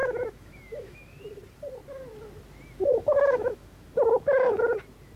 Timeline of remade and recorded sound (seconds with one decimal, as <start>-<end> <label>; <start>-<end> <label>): 0.0-1.2 remade; 1.2-2.9 recorded; 2.9-4.6 remade; 4.6-5.2 recorded